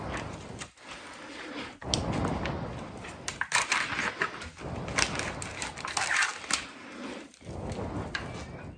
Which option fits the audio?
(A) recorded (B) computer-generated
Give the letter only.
A